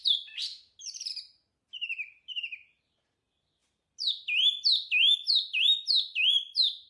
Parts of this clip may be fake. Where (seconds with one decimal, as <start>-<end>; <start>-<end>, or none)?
none